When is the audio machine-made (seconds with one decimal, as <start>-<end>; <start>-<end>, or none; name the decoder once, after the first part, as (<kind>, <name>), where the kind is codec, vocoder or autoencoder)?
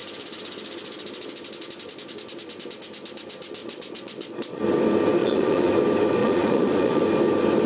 3.6-4.6 (vocoder, Vocos); 5.2-5.7; 6.2-7.0